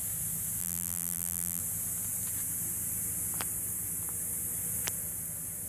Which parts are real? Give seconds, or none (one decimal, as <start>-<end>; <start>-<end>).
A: 0.0-0.6; 1.6-5.7